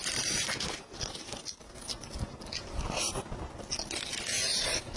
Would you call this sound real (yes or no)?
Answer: yes